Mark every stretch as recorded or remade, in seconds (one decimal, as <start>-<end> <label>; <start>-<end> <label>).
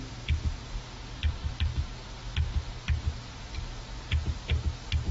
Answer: 0.0-5.1 recorded